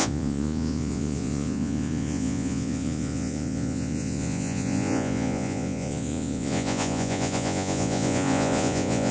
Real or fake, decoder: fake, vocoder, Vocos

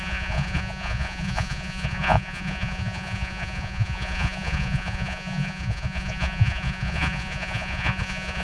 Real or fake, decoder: fake, vocoder, Vocos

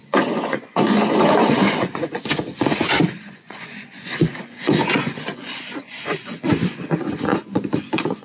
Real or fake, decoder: fake, vocoder, Vocos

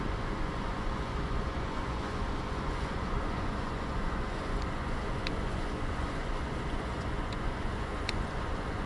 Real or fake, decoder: fake, vocoder, Vocos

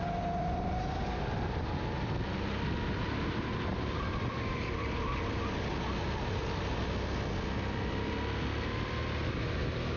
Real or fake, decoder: real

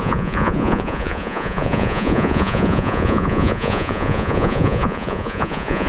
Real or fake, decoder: fake, vocoder, Vocos